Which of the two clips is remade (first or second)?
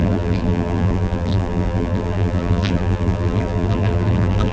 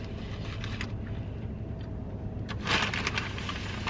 first